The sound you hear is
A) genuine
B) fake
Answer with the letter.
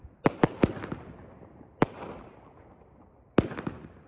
A